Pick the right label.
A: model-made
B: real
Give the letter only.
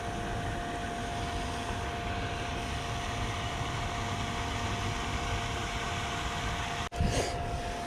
B